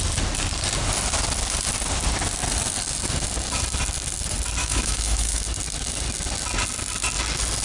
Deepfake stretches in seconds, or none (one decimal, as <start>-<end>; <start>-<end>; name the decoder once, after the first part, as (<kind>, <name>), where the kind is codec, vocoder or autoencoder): 4.6-5.4 (autoencoder, DAC-VAE)